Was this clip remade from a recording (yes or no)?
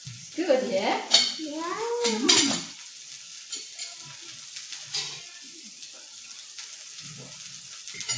no